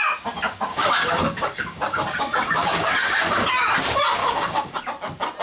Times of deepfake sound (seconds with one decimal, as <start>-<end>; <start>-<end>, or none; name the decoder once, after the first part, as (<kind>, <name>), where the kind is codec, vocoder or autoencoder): 0.7-3.5 (codec, DAC); 4.2-4.8